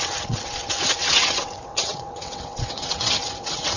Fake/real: fake